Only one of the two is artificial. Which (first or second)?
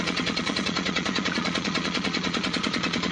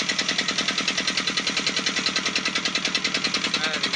first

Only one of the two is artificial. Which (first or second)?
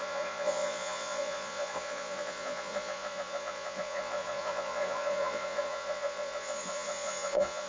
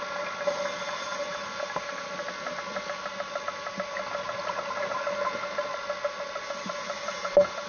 first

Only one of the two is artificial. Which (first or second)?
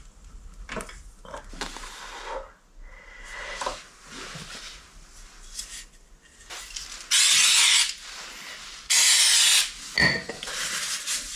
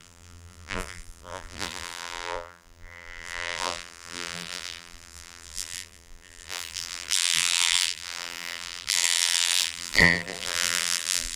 second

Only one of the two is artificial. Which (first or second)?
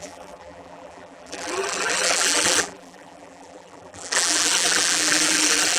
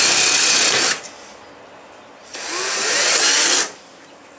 first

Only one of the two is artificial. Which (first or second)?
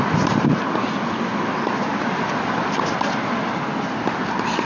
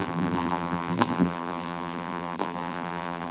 second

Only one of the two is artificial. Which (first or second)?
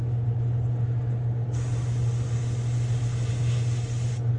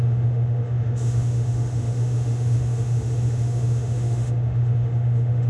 second